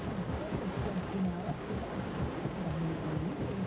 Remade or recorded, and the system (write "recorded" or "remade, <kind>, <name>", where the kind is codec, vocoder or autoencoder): remade, codec, DAC